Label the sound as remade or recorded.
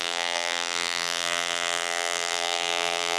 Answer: remade